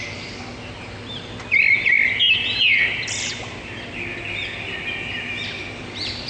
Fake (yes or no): no